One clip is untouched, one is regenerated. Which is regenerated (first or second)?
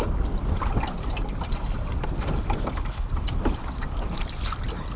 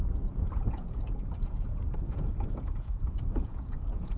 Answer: second